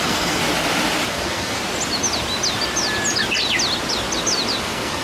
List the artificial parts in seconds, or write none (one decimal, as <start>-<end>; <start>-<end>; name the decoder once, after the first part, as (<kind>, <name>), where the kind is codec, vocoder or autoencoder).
0.0-0.4 (codec, SNAC); 1.1-1.6; 4.6-5.0